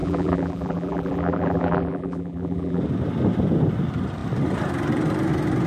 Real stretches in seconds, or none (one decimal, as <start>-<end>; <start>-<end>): 2.8-5.7